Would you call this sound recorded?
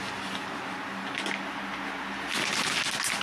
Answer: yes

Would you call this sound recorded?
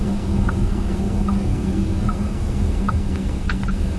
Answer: no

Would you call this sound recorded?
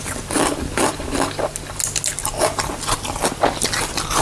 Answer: yes